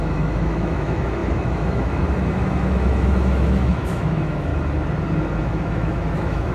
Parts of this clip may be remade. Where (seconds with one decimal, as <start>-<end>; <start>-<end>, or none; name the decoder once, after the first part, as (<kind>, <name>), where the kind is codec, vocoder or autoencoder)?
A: 0.0-4.5 (autoencoder, DAC-VAE); 5.4-6.5